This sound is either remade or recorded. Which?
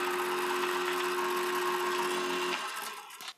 recorded